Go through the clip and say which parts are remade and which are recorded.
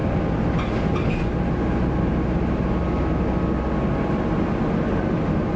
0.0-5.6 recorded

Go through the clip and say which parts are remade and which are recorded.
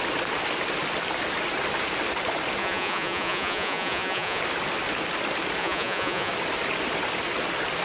0.0-2.6 recorded; 2.6-4.4 remade; 4.4-5.6 recorded; 5.6-6.3 remade; 6.3-7.8 recorded